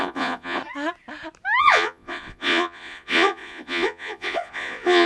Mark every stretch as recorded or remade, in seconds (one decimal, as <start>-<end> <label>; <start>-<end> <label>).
0.0-0.6 remade; 0.6-1.6 recorded; 1.6-5.1 remade